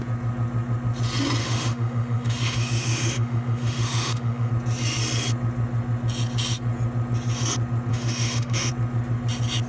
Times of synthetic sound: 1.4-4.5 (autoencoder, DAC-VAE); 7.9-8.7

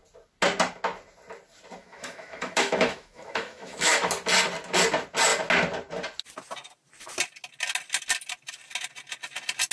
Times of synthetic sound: 1.8-4.1 (autoencoder, DAC-VAE)

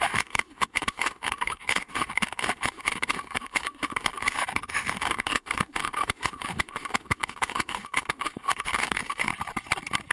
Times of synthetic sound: 0.0-9.3 (autoencoder, DAC-VAE)

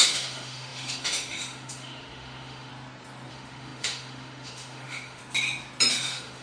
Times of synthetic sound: 0.0-2.7 (autoencoder, DAC-VAE); 3.3-5.2; 5.9-6.4

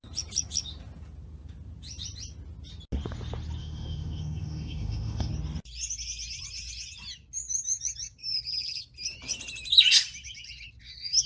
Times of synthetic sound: 3.6-5.3 (autoencoder, DAC-VAE)